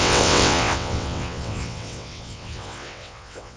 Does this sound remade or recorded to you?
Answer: remade